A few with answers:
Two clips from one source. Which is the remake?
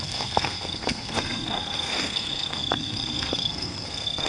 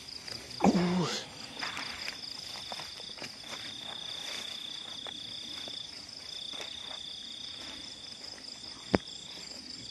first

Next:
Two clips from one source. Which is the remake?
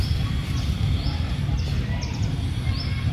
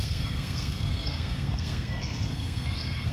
second